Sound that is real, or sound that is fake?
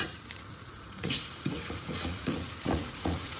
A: fake